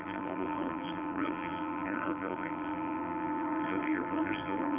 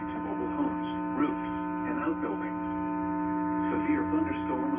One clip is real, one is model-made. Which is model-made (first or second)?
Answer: first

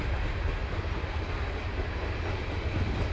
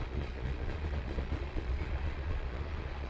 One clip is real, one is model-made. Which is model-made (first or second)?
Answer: second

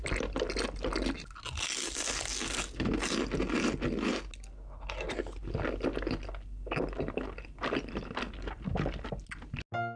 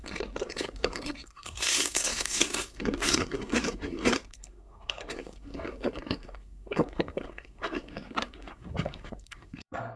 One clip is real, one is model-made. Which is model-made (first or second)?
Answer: second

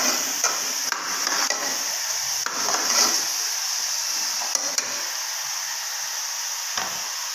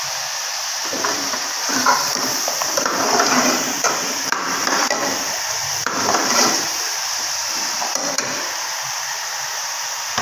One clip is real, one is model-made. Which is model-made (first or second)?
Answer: second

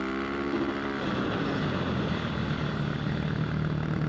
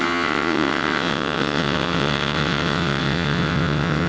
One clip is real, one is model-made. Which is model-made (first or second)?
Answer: second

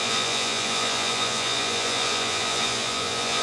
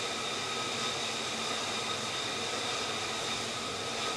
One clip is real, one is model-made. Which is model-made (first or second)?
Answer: first